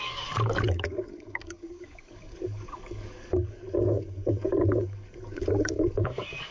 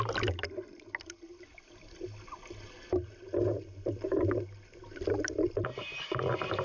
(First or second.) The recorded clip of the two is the second